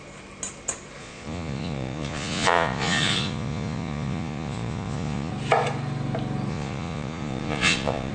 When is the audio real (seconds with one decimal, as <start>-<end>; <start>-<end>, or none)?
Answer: 0.0-1.0; 5.3-6.5